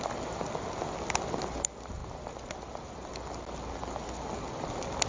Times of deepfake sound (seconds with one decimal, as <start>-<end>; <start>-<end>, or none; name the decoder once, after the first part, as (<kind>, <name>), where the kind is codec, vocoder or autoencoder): none